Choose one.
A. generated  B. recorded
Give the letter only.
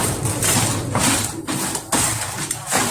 A